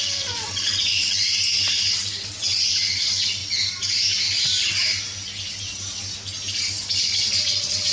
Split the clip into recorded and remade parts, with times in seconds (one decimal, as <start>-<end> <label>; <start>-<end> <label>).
0.0-1.3 remade; 1.3-1.9 recorded; 1.9-3.4 remade; 3.4-7.4 recorded; 7.4-7.9 remade